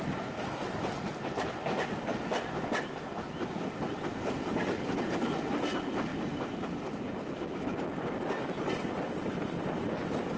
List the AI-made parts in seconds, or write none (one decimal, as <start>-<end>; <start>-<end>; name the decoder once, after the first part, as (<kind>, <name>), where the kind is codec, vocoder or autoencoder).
none